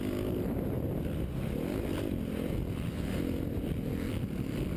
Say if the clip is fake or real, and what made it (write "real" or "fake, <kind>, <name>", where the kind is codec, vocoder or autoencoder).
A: real